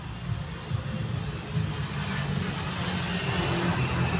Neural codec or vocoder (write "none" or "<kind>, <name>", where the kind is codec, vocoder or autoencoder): none